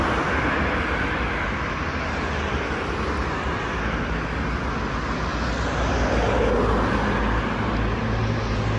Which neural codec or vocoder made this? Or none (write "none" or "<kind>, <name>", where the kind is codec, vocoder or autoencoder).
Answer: none